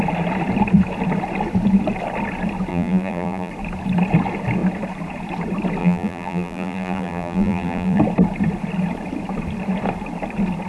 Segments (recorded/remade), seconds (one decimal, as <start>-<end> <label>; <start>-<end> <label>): 0.0-2.7 recorded; 2.7-3.5 remade; 3.5-5.8 recorded; 5.8-8.0 remade; 8.0-10.7 recorded